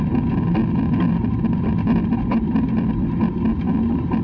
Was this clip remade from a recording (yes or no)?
no